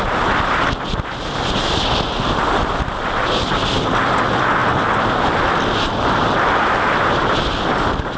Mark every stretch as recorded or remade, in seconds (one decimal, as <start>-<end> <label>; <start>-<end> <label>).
0.0-8.2 recorded

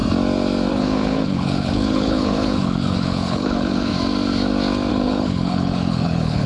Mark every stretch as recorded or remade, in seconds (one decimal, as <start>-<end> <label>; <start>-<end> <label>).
0.0-0.7 recorded; 0.7-3.9 remade; 3.9-4.9 recorded; 4.9-6.5 remade

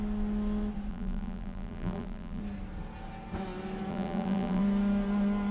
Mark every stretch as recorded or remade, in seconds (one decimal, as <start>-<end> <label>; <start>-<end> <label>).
0.0-0.9 recorded; 0.9-2.4 remade; 2.4-3.9 recorded; 3.9-4.6 remade; 4.6-5.5 recorded

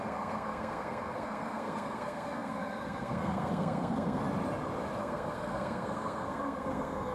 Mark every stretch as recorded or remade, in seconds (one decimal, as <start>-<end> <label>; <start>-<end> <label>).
0.0-4.2 remade; 4.2-5.0 recorded; 5.0-7.1 remade

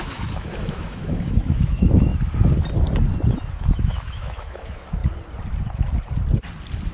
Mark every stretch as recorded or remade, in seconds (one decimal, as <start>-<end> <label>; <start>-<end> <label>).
0.0-2.1 remade; 2.1-3.5 recorded; 3.5-5.0 remade; 5.0-6.9 recorded

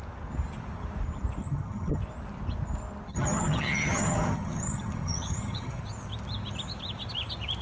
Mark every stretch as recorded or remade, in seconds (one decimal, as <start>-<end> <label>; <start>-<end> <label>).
0.0-1.4 recorded; 1.4-2.0 remade; 2.0-3.1 recorded; 3.1-5.8 remade; 5.8-7.6 recorded

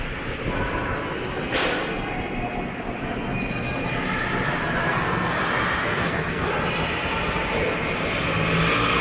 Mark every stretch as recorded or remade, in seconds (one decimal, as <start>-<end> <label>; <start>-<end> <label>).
0.0-4.9 recorded; 4.9-5.4 remade; 5.4-5.9 recorded; 5.9-6.5 remade; 6.5-9.0 recorded

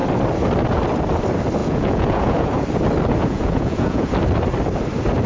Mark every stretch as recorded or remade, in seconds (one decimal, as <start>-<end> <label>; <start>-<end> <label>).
0.0-1.6 recorded; 1.6-2.5 remade; 2.5-3.2 recorded; 3.2-4.1 remade; 4.1-5.3 recorded